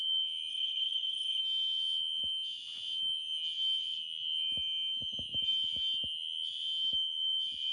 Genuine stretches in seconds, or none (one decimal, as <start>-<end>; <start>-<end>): 0.0-0.5; 1.4-7.7